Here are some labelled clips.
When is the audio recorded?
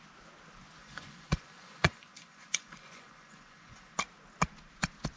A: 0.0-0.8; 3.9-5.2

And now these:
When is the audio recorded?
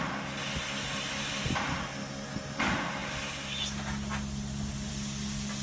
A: 0.0-5.6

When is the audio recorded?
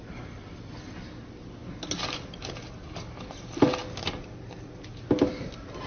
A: 0.0-5.9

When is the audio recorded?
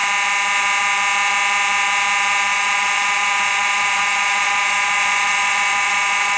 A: 0.0-2.5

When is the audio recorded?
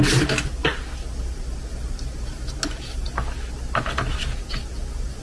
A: 0.0-5.2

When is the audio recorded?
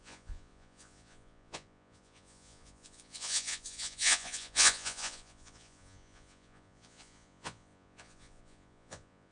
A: none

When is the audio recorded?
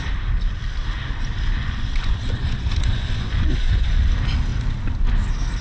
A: 0.0-1.6; 4.0-5.6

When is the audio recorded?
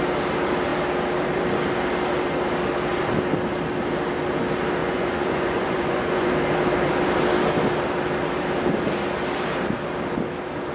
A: 0.0-4.8; 6.3-10.7